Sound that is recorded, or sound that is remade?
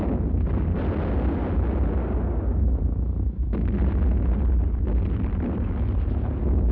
recorded